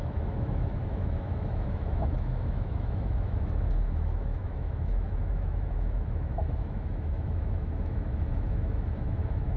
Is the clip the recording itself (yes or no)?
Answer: no